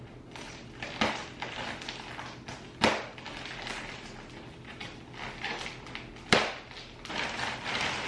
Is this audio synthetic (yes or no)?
no